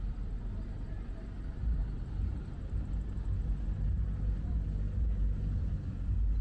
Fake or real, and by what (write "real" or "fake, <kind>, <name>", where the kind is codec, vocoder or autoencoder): real